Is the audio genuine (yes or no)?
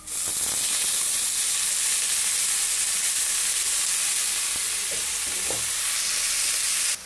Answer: yes